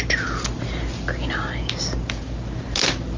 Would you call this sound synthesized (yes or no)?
no